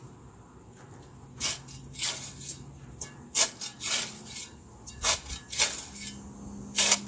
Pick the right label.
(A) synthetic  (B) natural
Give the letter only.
B